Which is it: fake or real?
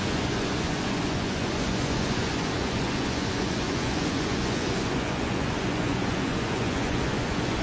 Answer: fake